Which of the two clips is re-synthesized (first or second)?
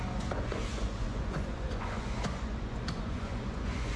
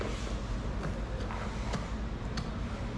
first